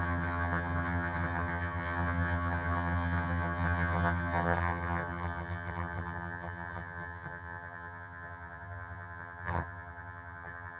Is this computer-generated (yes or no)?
yes